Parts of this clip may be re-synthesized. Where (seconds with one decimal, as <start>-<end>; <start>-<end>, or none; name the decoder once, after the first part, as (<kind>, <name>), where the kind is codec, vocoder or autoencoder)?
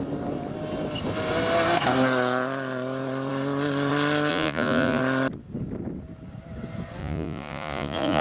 4.3-5.0 (vocoder, Vocos); 7.0-8.2